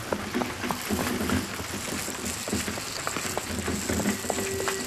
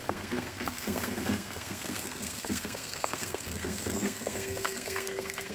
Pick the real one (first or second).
first